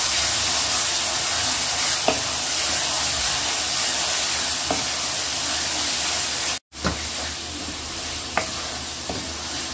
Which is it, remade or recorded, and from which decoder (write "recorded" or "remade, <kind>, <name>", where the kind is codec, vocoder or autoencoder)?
recorded